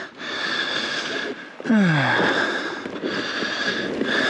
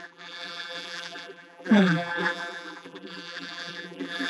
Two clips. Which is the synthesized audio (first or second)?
second